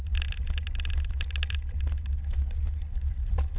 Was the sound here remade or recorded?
recorded